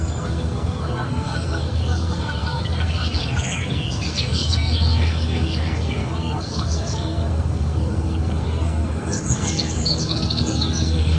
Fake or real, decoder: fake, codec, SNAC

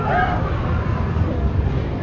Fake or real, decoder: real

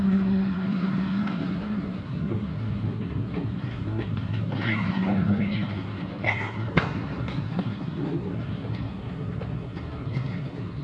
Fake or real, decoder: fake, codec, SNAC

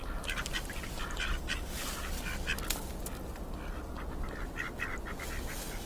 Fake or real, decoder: real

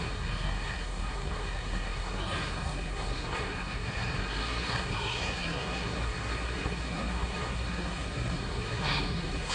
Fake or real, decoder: fake, codec, SNAC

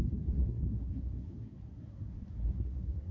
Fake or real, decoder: fake, codec, SNAC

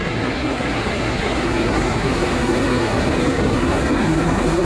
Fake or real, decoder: fake, codec, SNAC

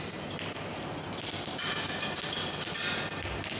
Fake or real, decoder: real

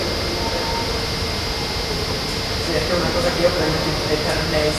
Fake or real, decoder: real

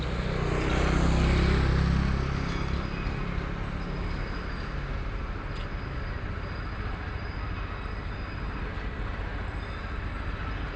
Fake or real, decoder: real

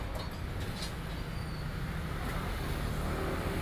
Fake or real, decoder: real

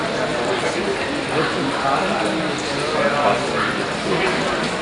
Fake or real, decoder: real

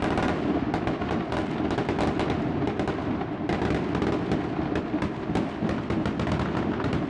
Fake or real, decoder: real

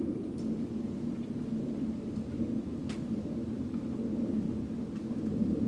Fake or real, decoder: real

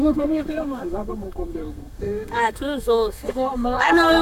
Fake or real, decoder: fake, codec, SNAC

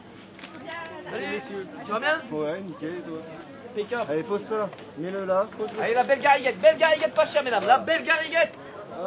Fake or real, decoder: real